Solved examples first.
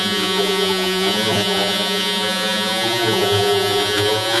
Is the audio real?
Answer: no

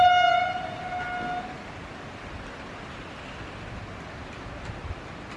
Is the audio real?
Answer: yes